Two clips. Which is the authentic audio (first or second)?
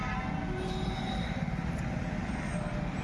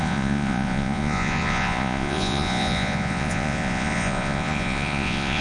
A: first